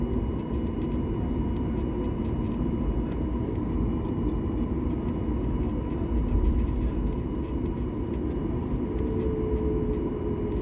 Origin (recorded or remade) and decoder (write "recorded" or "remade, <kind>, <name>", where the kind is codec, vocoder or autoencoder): recorded